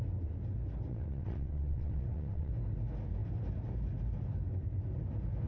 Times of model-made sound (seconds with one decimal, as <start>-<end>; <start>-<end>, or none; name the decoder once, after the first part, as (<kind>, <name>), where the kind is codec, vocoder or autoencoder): 0.9-2.5 (vocoder, WaveNeXt)